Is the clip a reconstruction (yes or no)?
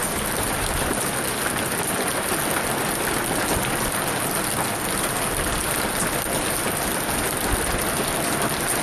no